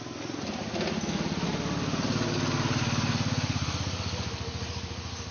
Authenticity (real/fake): real